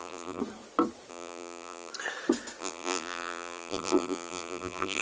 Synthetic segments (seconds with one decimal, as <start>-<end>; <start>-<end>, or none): 0.0-0.4; 1.1-1.9; 2.6-5.0